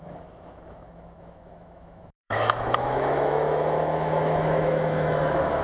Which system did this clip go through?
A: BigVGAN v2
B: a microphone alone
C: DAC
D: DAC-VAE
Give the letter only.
D